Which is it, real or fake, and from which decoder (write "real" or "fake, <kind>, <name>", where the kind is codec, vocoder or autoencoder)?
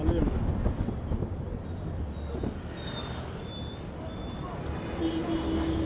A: real